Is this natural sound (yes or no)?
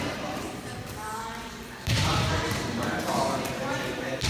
no